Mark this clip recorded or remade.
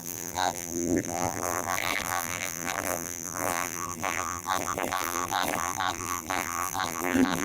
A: remade